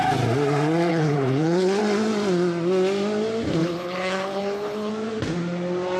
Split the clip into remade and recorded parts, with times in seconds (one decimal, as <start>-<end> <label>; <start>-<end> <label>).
0.0-0.9 recorded; 0.9-1.8 remade; 1.8-3.6 recorded; 3.6-4.9 remade; 4.9-6.0 recorded